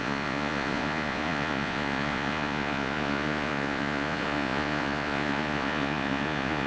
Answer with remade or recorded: remade